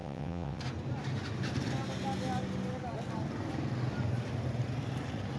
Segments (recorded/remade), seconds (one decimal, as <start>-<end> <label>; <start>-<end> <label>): 0.0-0.6 remade; 0.6-5.4 recorded